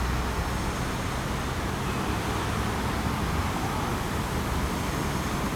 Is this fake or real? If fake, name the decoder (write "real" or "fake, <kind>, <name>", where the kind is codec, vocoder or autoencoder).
real